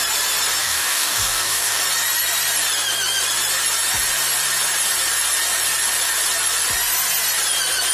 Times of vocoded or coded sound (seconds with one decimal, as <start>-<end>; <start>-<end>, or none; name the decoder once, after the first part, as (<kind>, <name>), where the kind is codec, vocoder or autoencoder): 0.6-1.8 (codec, DAC)